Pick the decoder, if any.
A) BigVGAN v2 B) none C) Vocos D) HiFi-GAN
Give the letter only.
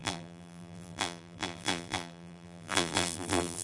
A